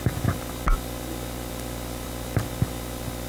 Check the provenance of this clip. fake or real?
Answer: real